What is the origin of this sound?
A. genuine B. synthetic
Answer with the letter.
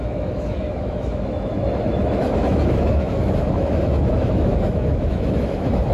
B